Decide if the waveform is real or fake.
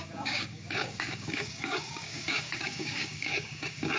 fake